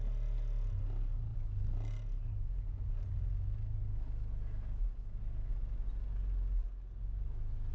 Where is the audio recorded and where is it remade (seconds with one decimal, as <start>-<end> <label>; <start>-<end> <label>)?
0.0-7.7 recorded